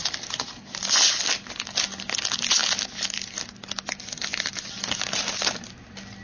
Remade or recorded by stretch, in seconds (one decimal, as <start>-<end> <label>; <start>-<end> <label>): 0.0-0.6 remade; 0.6-6.2 recorded